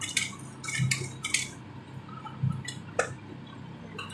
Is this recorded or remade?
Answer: recorded